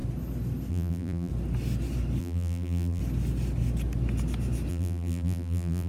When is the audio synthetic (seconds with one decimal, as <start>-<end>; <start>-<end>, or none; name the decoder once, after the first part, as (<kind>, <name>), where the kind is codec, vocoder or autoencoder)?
0.7-1.3 (vocoder, BigVGAN v2); 2.2-3.0; 4.7-5.9